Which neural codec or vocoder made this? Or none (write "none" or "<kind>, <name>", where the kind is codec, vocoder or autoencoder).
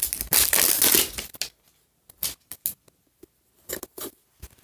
none